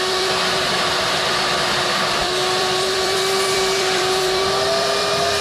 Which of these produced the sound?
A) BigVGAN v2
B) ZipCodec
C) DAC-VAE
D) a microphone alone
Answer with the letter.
A